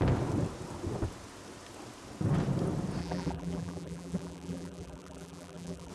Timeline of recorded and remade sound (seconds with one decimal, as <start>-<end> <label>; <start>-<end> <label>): 0.0-3.0 recorded; 3.0-5.9 remade